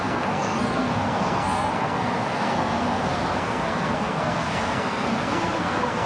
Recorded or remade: remade